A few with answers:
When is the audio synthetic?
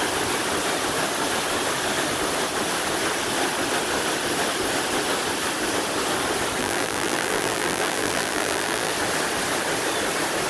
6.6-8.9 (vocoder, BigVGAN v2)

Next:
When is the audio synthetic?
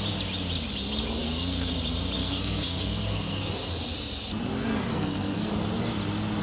1.2-1.7 (codec, SNAC); 2.2-3.5; 4.9-5.5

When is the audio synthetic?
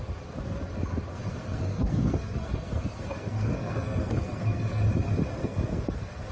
1.1-4.8 (codec, SNAC); 5.4-6.3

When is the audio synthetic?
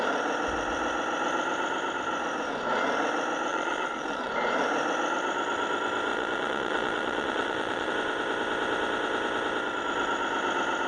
3.5-4.3 (vocoder, Vocos); 6.1-7.9